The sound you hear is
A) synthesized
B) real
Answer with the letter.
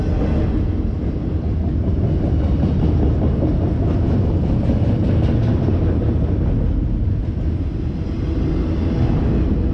B